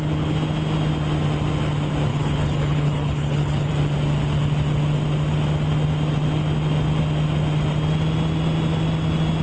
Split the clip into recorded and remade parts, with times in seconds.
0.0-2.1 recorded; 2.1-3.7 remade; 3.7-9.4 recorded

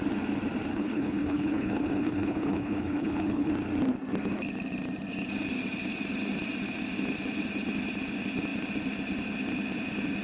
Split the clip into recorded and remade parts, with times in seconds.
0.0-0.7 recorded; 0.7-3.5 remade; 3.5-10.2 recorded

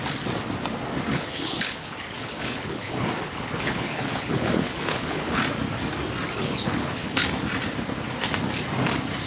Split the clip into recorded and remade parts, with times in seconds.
0.0-1.1 recorded; 1.1-5.4 remade; 5.4-6.4 recorded; 6.4-7.2 remade; 7.2-9.3 recorded